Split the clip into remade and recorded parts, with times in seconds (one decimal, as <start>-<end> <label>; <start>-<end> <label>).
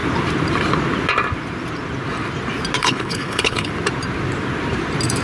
0.0-2.8 recorded; 2.8-3.7 remade; 3.7-5.2 recorded